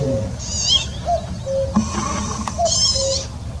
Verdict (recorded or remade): recorded